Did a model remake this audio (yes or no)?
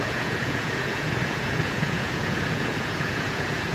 yes